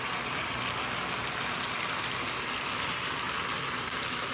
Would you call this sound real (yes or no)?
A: yes